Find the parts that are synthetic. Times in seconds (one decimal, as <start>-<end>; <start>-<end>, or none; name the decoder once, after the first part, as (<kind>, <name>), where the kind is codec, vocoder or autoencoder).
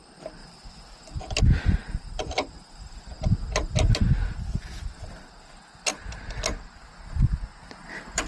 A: 0.4-1.4 (vocoder, BigVGAN v2); 1.8-4.1; 7.8-8.3